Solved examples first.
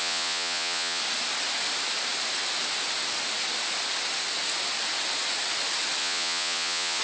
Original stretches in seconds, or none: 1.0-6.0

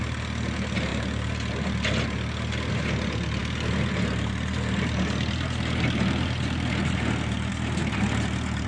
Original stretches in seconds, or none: 0.0-8.7

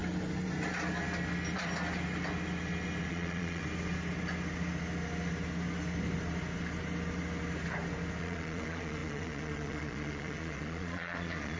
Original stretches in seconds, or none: 0.0-3.1; 3.6-8.2

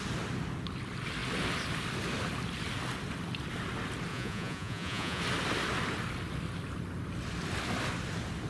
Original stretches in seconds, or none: 0.0-4.1; 5.2-8.5

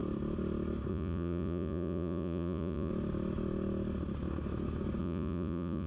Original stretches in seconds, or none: 0.0-0.9; 2.9-5.0

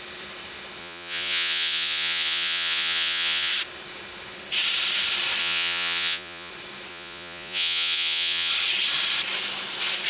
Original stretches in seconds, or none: 0.0-0.8; 3.5-5.4; 6.5-6.9; 8.5-10.1